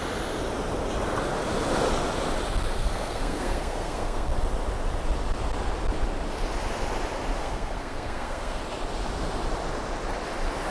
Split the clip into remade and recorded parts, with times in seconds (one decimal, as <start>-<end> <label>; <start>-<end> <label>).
0.0-2.8 recorded; 2.8-4.3 remade; 4.3-7.4 recorded; 7.4-8.6 remade; 8.6-10.7 recorded